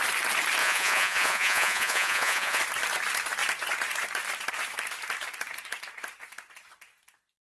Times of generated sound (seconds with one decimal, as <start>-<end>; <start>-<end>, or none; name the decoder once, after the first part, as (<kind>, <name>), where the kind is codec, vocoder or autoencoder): 0.6-2.6 (vocoder, Vocos)